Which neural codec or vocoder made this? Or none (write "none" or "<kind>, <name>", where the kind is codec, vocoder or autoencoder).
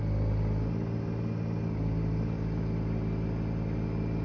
none